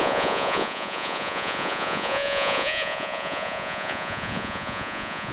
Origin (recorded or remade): remade